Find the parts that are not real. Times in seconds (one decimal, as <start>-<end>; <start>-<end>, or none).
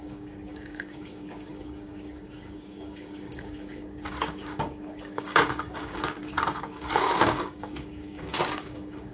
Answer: 0.0-9.1